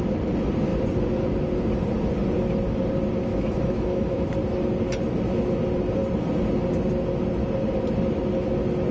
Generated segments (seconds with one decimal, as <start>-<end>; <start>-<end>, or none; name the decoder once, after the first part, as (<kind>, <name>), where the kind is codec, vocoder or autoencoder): 3.3-4.3 (autoencoder, DAC-VAE)